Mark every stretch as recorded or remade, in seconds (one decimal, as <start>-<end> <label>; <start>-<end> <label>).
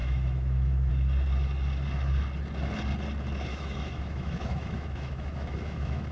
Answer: 0.0-0.9 remade; 0.9-3.5 recorded; 3.5-6.1 remade